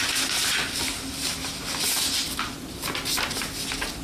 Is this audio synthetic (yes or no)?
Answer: no